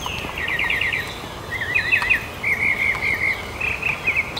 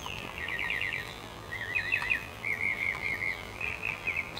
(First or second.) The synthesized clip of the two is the second